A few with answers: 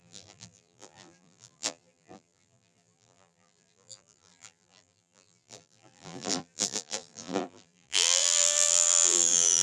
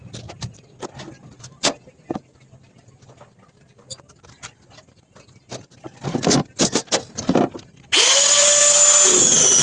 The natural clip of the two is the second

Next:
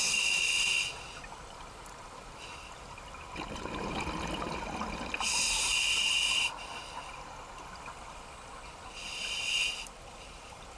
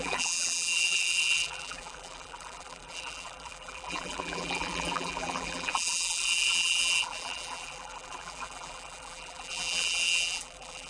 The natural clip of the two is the first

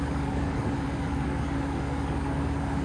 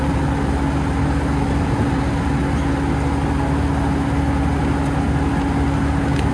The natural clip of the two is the second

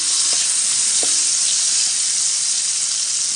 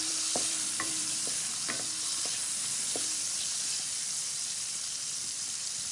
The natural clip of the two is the first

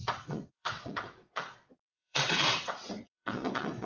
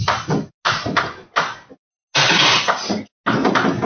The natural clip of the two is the second